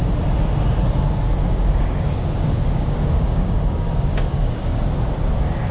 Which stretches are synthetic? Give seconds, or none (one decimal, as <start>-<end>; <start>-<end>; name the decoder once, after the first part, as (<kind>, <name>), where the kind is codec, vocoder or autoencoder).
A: 1.4-4.8 (codec, DAC)